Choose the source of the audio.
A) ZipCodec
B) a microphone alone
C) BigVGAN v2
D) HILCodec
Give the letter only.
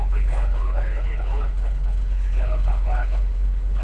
D